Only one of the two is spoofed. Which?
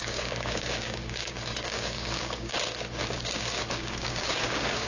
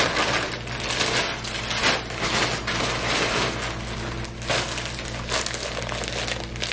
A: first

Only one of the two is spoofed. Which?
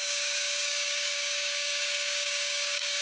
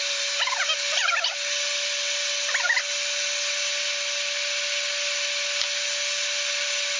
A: first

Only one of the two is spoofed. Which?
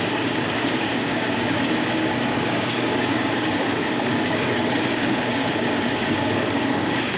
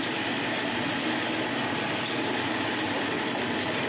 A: first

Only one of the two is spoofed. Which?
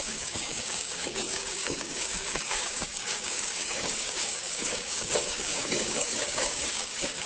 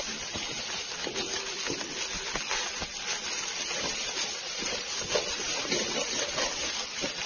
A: first